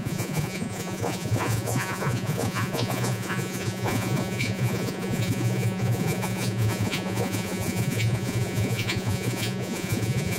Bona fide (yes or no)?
no